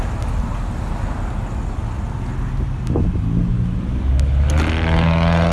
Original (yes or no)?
yes